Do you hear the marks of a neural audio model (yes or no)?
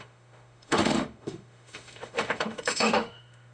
yes